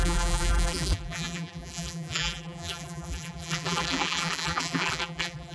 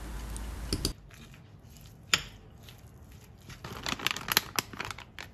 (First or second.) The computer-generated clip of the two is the first